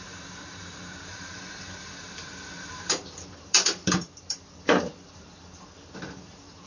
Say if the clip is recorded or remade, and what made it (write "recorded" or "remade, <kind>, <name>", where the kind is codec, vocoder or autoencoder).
remade, vocoder, BigVGAN v2